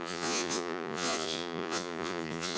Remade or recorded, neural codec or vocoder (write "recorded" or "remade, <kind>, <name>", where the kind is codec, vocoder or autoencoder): remade, vocoder, Vocos